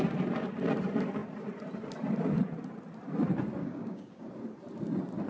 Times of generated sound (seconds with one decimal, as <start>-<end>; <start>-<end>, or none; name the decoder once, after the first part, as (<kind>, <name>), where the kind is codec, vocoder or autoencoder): 3.6-4.3 (codec, DAC)